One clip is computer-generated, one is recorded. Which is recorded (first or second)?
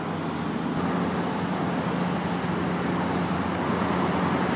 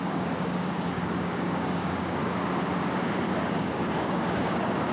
first